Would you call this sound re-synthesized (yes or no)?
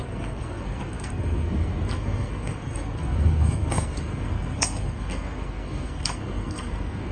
yes